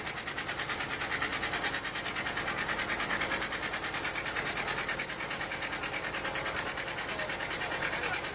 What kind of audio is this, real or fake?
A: real